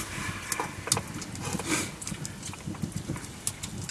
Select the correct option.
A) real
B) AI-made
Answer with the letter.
A